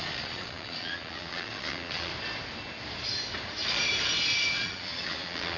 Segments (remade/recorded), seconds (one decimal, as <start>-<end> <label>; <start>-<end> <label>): 0.0-2.1 remade; 2.1-4.5 recorded; 4.5-5.6 remade

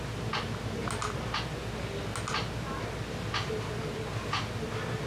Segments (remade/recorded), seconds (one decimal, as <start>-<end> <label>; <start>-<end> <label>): 0.0-5.1 recorded

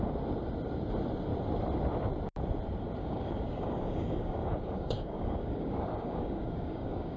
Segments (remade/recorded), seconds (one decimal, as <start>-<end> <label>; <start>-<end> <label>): 0.0-3.0 recorded; 3.0-7.2 remade